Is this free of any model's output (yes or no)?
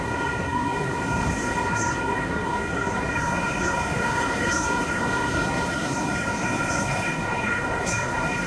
no